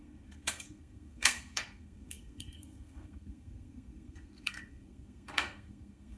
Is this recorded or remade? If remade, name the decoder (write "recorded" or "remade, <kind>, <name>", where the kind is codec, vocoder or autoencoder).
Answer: remade, codec, SNAC